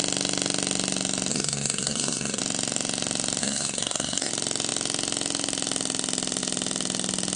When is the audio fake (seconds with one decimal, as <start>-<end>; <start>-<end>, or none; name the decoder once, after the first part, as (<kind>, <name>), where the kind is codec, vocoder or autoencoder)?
1.3-2.4 (codec, SNAC); 3.4-4.3